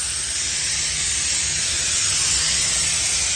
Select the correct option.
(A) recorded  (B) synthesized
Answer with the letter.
A